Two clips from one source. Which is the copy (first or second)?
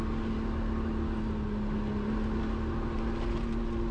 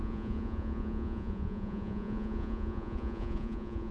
second